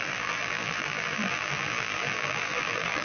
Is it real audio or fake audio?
fake